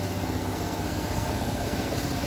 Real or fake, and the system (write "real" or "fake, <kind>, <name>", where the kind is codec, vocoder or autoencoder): fake, codec, SNAC